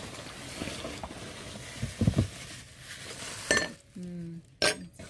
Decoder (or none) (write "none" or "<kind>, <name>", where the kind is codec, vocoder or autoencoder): none